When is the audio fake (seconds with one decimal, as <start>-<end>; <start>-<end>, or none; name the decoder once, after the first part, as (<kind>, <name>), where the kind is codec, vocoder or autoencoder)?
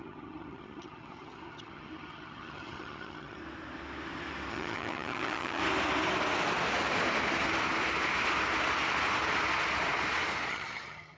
0.0-3.4 (vocoder, HiFi-GAN); 4.5-5.6; 10.5-11.2